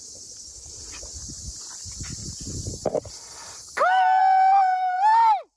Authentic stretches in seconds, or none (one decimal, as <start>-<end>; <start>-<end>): 0.0-5.6